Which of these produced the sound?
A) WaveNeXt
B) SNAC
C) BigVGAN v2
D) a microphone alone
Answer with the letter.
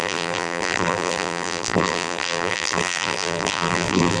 C